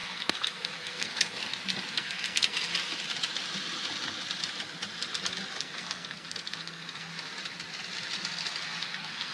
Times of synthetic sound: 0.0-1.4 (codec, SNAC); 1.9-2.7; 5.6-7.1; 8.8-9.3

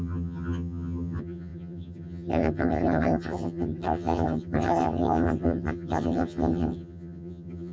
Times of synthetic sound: 0.0-7.7 (vocoder, HiFi-GAN)

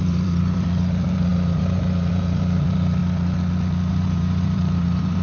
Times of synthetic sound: 0.0-3.0 (vocoder, BigVGAN v2); 3.9-5.2

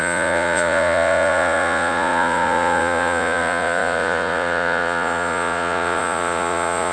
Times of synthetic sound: 0.0-6.9 (vocoder, Vocos)

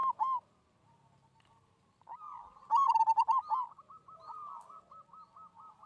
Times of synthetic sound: none

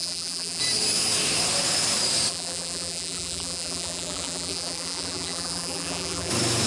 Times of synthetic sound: 0.0-0.6 (vocoder, BigVGAN v2); 2.3-6.3

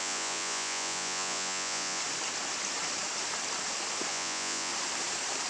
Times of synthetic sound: 0.0-2.0 (vocoder, Vocos); 4.1-4.7

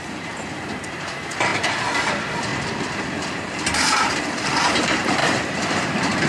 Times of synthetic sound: 0.0-2.5 (vocoder, BigVGAN v2); 3.5-6.3